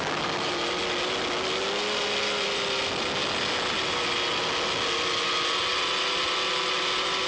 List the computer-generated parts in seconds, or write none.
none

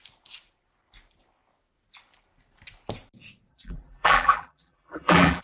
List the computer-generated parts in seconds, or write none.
3.5-5.4